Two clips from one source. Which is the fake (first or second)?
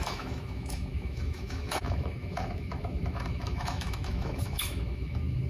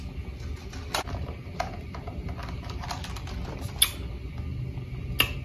first